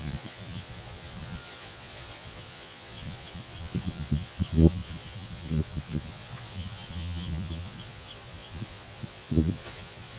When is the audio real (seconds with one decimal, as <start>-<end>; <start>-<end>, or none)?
none